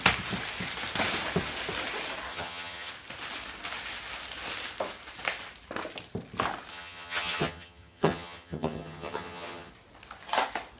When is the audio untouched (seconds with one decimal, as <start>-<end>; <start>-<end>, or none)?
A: 0.0-2.3; 2.9-6.7; 9.7-10.8